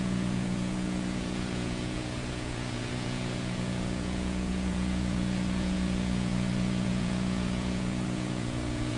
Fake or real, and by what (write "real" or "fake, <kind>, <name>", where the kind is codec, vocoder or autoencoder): fake, vocoder, Vocos